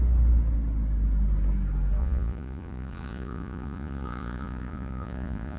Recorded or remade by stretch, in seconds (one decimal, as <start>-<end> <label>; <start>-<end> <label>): 0.0-2.0 recorded; 2.0-5.6 remade